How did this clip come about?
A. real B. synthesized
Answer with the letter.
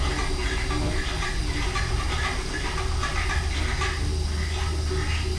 A